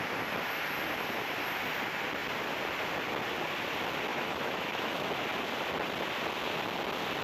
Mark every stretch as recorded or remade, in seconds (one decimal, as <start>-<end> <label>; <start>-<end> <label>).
0.0-4.1 recorded; 4.1-5.1 remade; 5.1-7.2 recorded